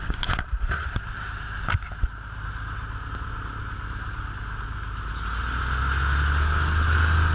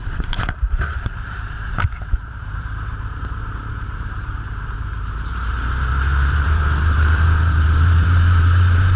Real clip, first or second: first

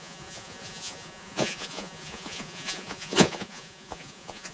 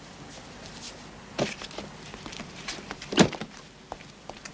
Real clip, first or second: second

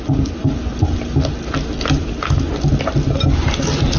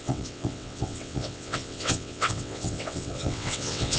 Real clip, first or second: first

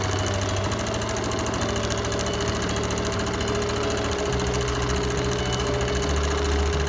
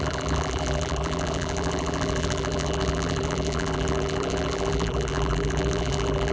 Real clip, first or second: first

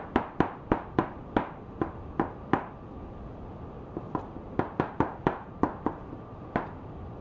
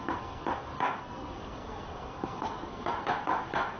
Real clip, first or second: first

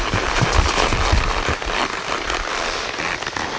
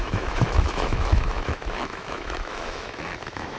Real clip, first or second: first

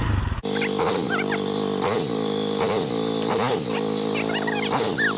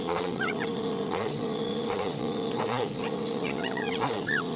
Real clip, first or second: first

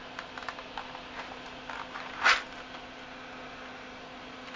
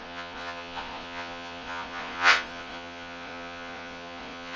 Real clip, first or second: first